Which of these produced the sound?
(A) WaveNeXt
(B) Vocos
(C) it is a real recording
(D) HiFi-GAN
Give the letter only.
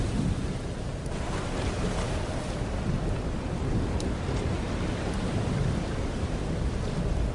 C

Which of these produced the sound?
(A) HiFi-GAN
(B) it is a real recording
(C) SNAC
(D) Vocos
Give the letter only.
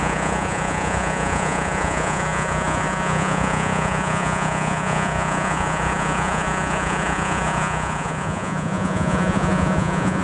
D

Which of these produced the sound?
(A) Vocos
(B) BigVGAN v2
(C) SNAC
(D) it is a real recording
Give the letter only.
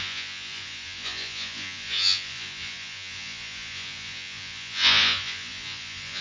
A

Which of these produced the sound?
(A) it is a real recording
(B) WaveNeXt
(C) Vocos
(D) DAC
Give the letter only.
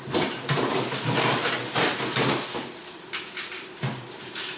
A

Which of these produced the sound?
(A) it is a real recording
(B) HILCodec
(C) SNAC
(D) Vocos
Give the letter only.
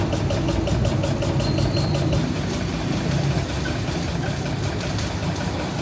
A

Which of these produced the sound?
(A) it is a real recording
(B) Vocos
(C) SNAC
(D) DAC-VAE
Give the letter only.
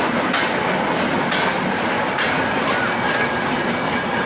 A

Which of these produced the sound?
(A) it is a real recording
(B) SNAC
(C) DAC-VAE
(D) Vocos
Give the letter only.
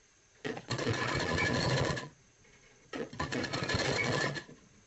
D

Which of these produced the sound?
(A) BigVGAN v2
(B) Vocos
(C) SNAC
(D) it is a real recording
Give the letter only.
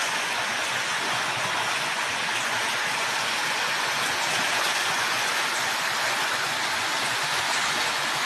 B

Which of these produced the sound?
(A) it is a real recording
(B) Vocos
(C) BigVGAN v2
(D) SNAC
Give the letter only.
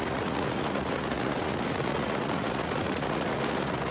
B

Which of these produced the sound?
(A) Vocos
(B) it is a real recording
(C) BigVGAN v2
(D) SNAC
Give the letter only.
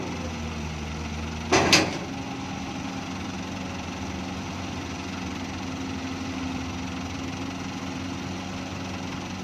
B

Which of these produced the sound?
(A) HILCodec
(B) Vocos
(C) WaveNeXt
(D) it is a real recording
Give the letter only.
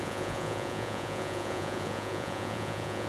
B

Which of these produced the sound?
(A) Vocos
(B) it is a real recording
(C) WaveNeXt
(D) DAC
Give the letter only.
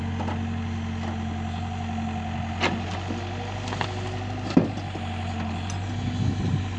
B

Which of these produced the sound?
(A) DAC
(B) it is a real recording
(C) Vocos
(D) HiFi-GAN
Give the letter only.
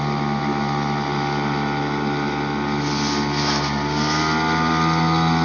B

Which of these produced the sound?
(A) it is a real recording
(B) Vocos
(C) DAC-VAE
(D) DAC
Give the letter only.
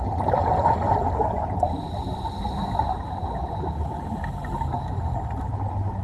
A